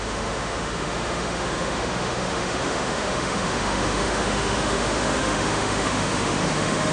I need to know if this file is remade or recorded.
remade